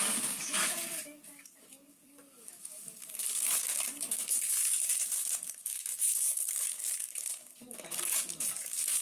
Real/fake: fake